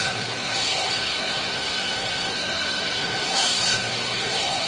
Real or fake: fake